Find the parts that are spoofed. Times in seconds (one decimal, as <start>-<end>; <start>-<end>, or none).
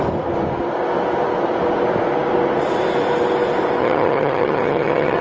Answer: 3.8-5.2